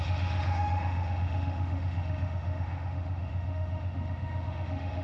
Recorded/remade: remade